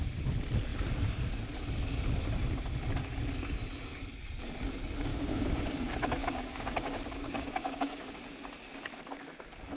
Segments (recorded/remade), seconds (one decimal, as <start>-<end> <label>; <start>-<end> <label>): 0.0-5.1 recorded; 5.1-5.6 remade; 5.6-6.2 recorded; 6.2-8.2 remade; 8.2-9.8 recorded

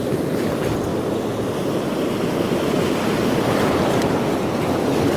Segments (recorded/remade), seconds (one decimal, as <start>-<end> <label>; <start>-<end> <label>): 0.0-5.2 recorded